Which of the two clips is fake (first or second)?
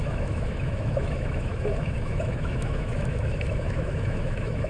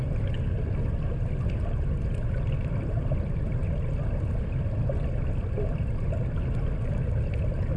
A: first